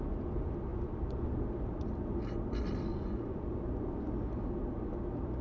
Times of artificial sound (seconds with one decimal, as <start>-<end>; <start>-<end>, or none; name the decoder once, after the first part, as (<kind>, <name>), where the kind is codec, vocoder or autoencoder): 2.9-3.5 (vocoder, Vocos)